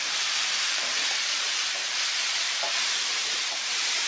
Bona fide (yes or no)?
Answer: no